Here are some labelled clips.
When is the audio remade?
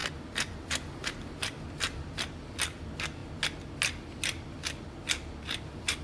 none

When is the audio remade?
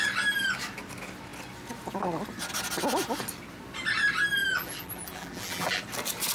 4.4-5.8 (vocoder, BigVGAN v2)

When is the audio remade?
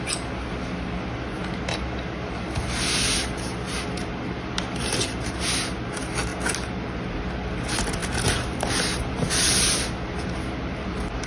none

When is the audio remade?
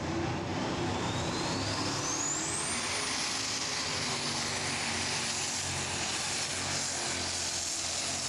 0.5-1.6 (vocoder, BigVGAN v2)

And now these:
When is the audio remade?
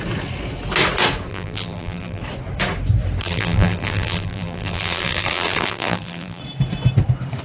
1.3-2.2 (vocoder, BigVGAN v2); 3.2-6.4